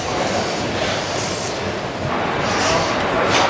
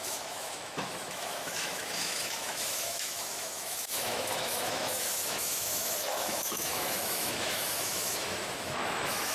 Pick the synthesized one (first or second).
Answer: second